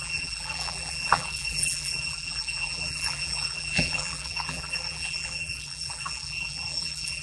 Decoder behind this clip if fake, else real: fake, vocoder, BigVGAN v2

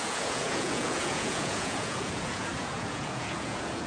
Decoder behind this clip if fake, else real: fake, vocoder, Vocos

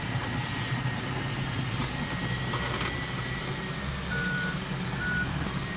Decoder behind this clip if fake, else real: real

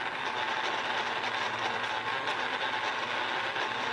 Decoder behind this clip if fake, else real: real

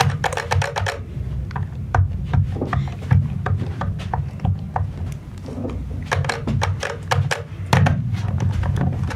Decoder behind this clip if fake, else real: real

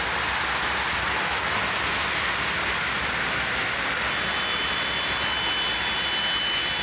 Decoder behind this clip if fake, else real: real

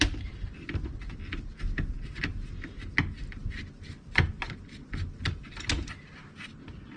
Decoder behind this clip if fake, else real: real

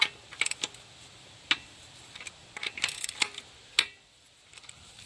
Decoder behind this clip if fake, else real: real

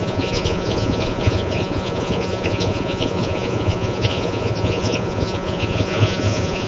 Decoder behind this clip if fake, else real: fake, vocoder, Vocos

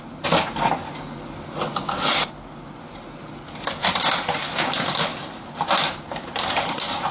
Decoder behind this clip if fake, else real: real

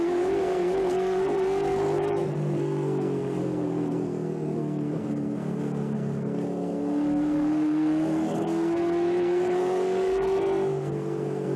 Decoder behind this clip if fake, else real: fake, codec, SNAC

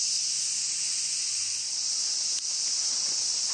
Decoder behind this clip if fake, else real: real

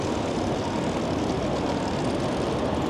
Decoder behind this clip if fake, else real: real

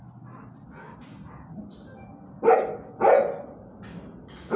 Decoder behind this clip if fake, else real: real